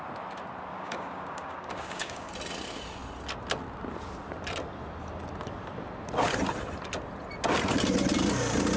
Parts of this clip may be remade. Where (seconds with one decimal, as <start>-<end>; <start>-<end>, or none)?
0.7-2.3